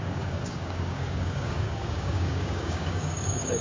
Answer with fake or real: fake